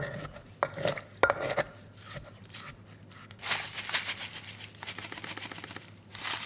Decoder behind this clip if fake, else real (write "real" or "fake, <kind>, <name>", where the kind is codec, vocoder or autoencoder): real